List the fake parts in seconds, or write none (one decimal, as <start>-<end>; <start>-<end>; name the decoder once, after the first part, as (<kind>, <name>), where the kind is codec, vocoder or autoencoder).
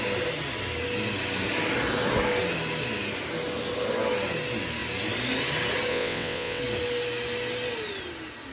5.9-6.6 (vocoder, WaveNeXt)